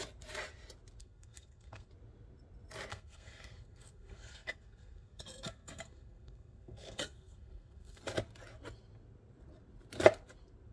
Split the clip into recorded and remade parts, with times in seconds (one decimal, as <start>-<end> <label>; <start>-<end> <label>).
0.0-1.0 recorded; 1.0-1.9 remade; 1.9-2.9 recorded; 2.9-8.0 remade; 8.0-10.7 recorded